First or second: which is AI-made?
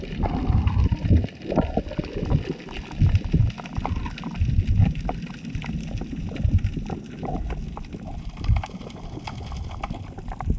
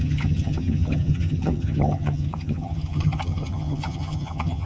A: second